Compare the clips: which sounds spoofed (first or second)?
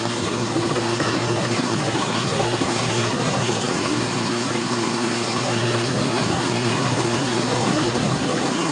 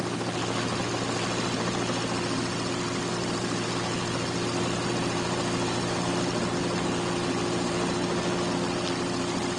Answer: first